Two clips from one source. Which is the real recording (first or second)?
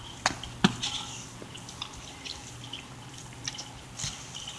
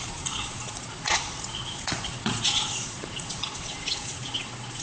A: first